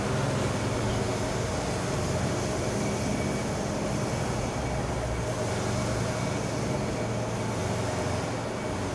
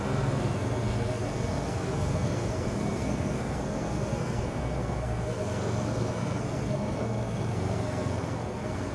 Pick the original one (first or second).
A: first